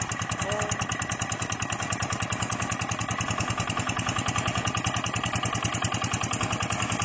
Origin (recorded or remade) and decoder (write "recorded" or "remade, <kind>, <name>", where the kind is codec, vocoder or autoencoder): recorded